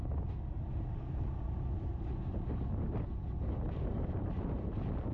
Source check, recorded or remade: recorded